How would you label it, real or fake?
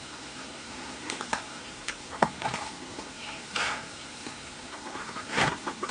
fake